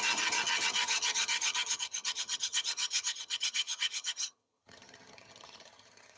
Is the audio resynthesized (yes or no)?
yes